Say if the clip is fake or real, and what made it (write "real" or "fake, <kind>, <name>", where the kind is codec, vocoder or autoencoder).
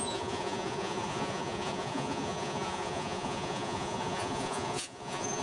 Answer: fake, vocoder, Vocos